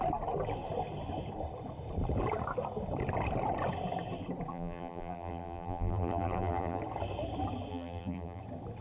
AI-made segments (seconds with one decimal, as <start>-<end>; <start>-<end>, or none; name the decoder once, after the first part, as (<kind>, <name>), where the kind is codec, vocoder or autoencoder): 4.5-6.8 (vocoder, BigVGAN v2); 7.7-8.4